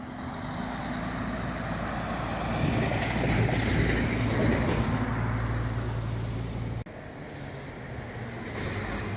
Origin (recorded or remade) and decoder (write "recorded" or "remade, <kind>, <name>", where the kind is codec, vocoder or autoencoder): recorded